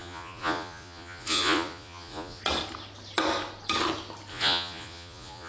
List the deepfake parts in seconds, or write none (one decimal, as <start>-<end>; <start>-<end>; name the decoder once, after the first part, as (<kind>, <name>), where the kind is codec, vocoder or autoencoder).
0.0-2.4 (vocoder, Vocos); 4.3-5.5